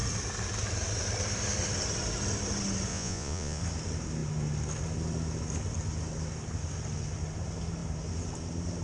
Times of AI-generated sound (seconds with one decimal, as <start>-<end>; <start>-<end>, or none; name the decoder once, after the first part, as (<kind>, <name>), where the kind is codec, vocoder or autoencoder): 2.9-3.6 (vocoder, Vocos)